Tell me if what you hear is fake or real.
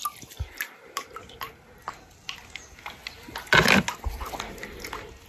real